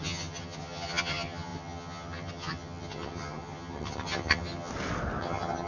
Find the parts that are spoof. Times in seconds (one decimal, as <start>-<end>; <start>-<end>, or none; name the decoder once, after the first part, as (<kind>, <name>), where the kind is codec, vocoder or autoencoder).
0.0-4.7 (vocoder, HiFi-GAN); 5.2-5.7